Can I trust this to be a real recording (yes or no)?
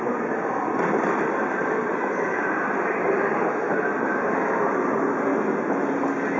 yes